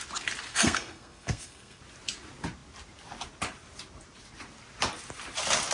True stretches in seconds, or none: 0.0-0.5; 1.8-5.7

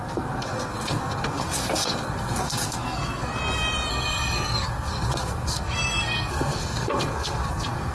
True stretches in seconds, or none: 3.3-3.9

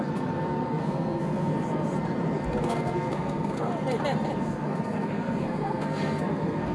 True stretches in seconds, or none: 1.5-2.6; 3.7-4.4

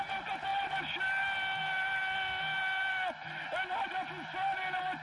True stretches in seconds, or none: 0.0-5.0

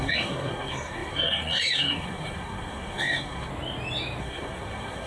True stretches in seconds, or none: 3.5-4.2